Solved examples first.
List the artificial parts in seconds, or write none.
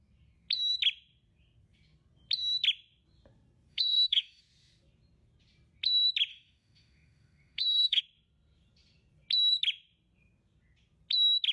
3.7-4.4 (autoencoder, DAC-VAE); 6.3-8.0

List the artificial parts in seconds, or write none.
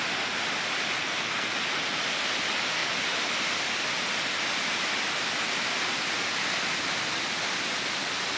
1.0-1.5 (codec, SNAC)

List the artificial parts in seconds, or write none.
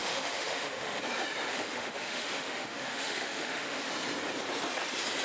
0.0-1.0 (autoencoder, DAC-VAE); 1.5-3.9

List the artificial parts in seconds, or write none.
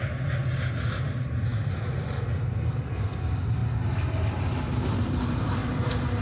0.0-0.4 (vocoder, BigVGAN v2); 1.0-1.5; 2.7-3.6; 4.3-6.2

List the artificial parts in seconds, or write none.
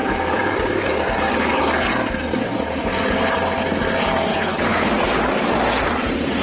4.3-4.9 (codec, HILCodec)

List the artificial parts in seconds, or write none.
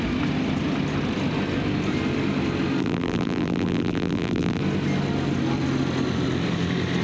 2.8-4.6 (vocoder, BigVGAN v2)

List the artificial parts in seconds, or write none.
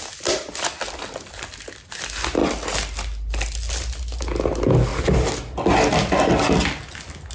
none